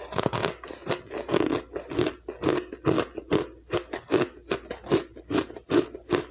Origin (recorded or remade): recorded